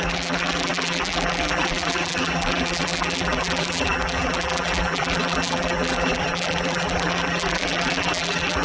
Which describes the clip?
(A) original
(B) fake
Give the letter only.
B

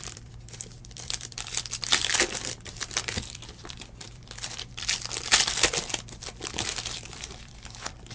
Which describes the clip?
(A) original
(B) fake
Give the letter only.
B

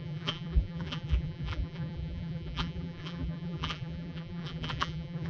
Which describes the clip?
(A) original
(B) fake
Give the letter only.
B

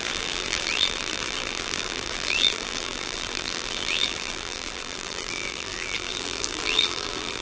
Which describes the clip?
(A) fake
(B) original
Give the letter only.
A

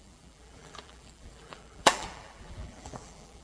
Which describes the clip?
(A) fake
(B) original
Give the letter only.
A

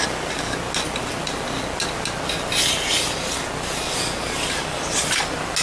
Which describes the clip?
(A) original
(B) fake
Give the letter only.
A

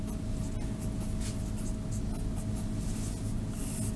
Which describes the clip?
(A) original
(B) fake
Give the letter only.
A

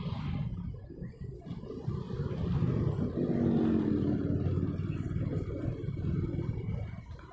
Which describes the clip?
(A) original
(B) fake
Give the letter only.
A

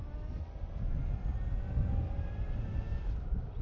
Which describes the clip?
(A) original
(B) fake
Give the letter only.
A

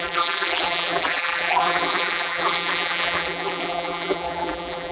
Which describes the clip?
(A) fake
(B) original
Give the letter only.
A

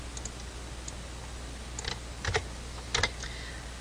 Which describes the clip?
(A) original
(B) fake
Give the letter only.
A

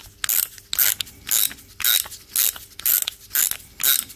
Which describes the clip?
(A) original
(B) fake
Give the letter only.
A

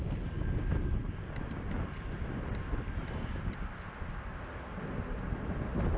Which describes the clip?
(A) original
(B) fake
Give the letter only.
A